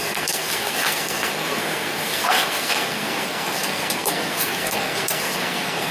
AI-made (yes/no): yes